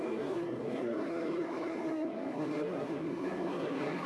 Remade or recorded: remade